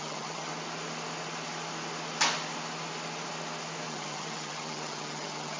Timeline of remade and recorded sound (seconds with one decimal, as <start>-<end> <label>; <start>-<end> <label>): 0.0-0.5 remade; 0.5-3.9 recorded; 3.9-5.6 remade